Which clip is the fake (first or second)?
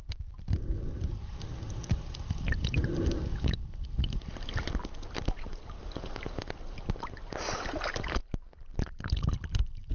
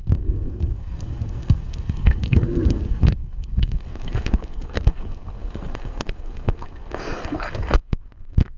second